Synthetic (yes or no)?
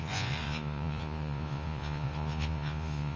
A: yes